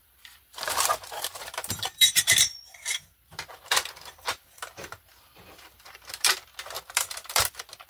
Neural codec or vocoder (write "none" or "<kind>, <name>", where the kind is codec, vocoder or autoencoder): vocoder, BigVGAN v2